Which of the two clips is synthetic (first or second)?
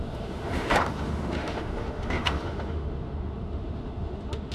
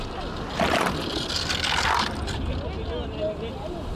first